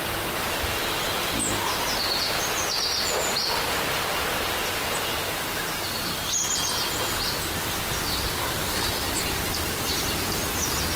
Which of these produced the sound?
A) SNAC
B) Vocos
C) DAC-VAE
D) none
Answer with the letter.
D